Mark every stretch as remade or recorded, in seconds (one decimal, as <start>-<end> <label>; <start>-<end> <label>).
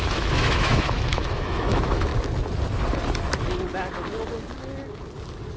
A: 0.0-2.1 remade; 2.1-5.6 recorded